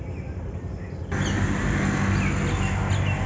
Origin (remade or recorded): recorded